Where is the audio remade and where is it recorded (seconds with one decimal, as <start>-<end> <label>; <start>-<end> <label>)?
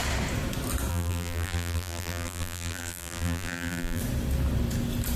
0.0-0.9 recorded; 0.9-4.0 remade; 4.0-5.2 recorded